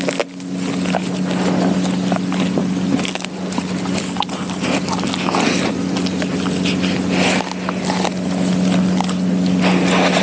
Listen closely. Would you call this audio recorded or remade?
recorded